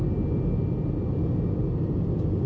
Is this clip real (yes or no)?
yes